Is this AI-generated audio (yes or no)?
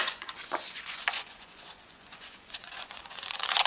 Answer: yes